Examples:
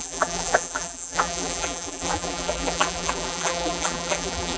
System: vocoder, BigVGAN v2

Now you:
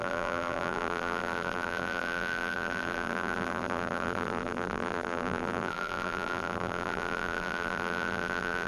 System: vocoder, BigVGAN v2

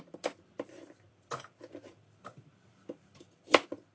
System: vocoder, BigVGAN v2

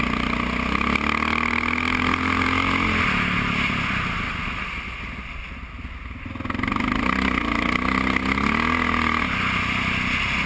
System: none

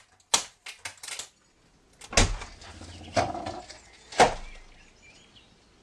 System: none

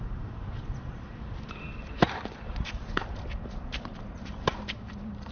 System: vocoder, BigVGAN v2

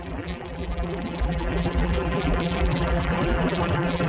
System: vocoder, BigVGAN v2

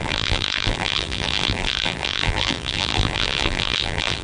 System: vocoder, BigVGAN v2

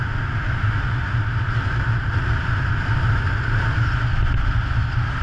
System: none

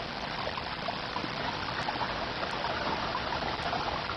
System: none